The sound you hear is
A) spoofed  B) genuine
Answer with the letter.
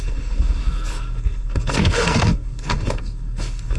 A